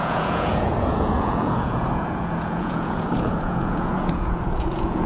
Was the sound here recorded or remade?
remade